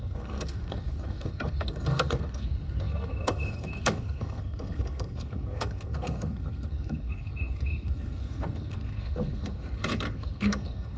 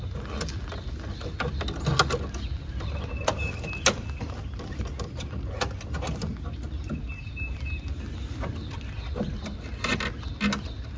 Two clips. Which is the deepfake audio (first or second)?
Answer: first